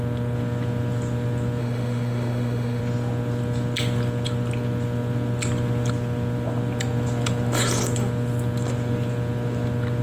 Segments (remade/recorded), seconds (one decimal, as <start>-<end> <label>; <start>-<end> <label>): 0.0-1.6 recorded; 1.6-2.8 remade; 2.8-10.0 recorded